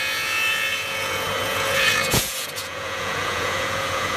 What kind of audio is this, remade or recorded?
remade